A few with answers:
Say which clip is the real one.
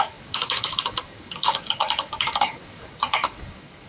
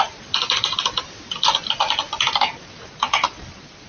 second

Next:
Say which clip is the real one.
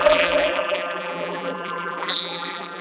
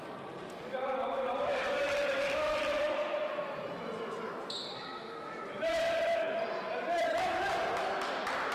second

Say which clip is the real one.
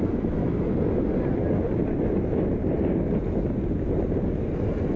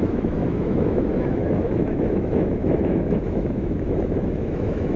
first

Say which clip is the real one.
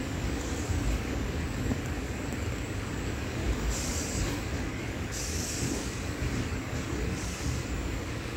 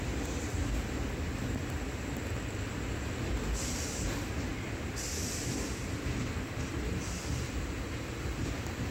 second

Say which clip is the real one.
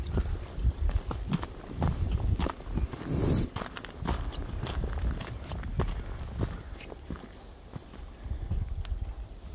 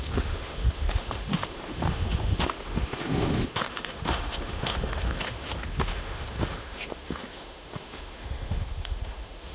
first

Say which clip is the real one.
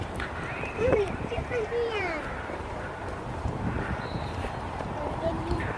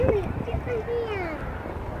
second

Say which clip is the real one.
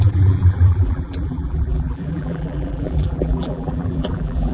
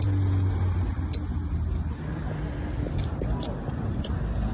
second